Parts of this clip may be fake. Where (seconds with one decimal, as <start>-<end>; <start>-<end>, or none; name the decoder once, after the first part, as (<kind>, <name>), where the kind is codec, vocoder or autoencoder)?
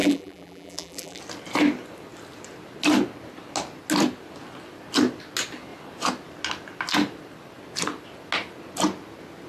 0.0-1.2 (vocoder, BigVGAN v2)